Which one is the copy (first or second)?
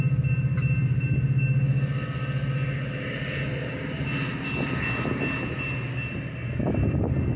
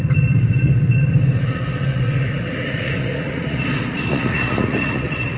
second